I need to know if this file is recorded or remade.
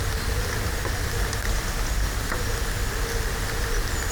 recorded